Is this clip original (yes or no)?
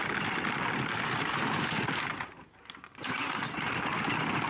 yes